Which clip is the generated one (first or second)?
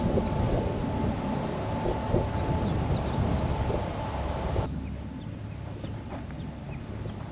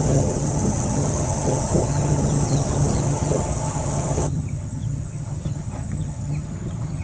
second